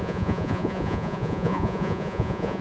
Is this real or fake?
fake